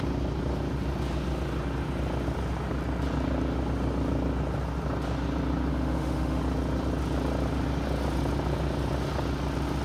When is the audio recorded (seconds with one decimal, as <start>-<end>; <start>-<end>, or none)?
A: 0.0-5.7; 6.4-9.8